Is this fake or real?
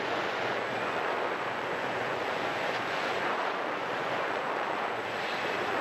fake